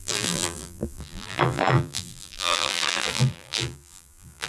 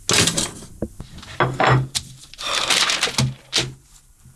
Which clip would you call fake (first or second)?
first